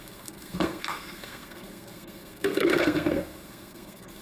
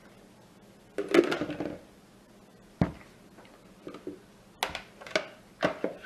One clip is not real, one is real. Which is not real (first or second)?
first